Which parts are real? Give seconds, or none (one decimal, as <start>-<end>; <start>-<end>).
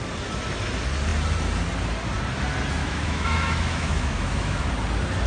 0.0-2.8; 4.7-5.3